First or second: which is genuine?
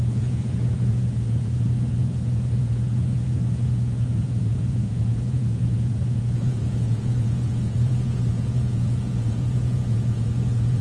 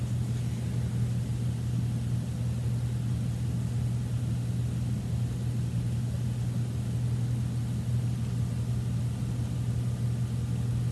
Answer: second